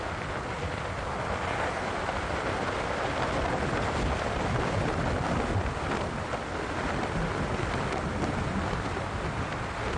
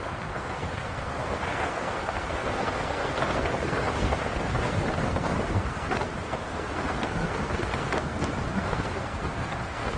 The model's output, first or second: second